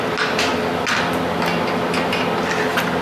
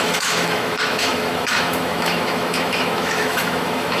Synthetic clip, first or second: second